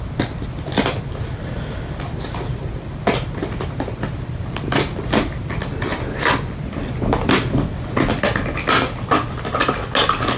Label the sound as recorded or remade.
recorded